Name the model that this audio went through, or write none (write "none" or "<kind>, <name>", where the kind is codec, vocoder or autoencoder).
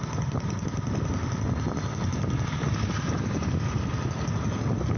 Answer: none